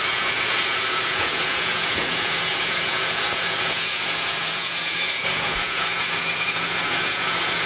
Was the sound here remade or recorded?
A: remade